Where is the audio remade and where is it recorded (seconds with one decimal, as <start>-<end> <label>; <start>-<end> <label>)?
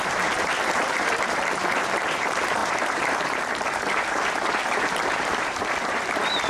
0.0-6.5 remade